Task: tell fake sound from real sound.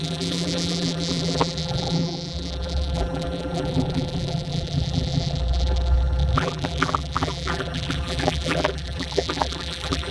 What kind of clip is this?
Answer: fake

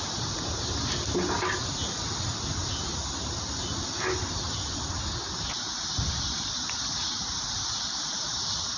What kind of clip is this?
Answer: real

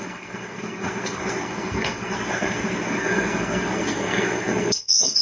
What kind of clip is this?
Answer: fake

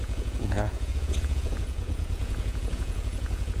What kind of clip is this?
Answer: fake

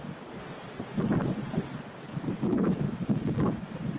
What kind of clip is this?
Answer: real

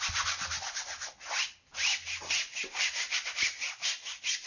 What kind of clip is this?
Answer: real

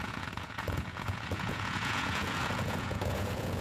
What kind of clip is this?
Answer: fake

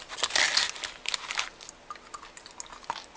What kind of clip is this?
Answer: real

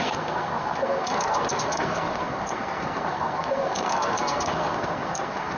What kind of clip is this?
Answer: fake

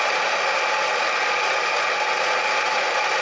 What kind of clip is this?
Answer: real